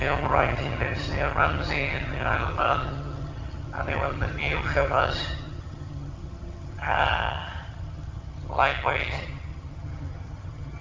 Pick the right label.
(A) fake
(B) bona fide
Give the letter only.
A